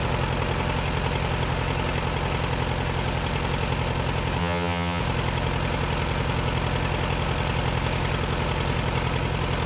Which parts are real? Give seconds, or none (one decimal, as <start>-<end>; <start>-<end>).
0.0-4.4; 5.0-9.7